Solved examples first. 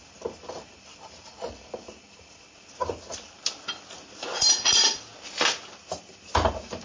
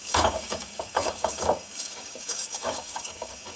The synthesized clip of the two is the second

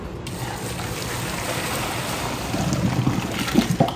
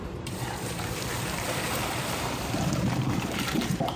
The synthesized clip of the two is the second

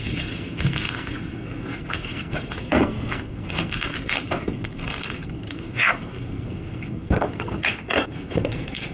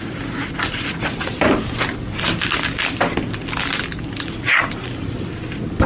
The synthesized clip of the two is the first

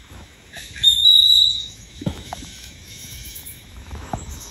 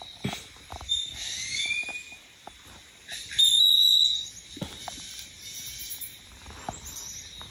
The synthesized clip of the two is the first